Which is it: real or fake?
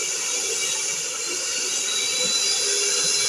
real